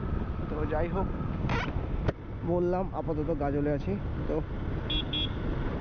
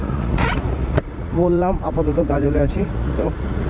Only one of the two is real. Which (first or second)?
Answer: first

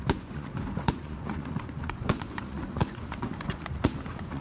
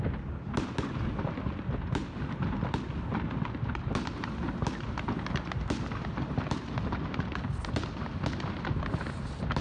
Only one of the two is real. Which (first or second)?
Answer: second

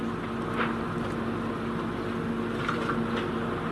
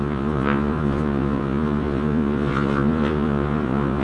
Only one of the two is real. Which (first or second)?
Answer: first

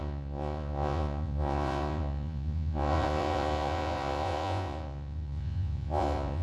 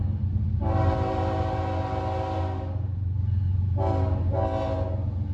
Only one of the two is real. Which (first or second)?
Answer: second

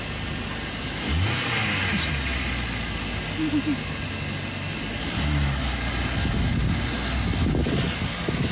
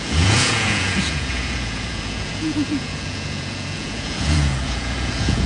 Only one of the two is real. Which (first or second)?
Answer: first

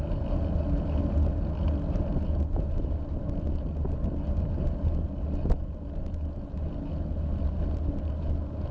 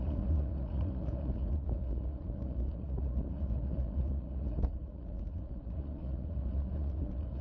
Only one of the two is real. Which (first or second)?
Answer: first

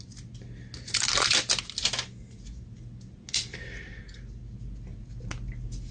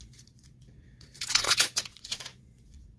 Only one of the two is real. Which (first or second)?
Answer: first